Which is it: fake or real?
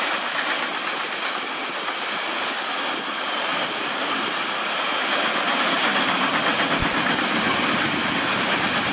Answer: real